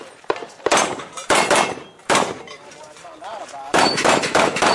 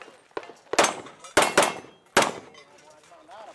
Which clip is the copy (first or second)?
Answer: first